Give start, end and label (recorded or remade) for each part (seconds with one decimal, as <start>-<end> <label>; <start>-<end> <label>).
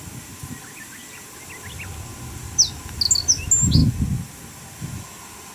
0.0-5.5 recorded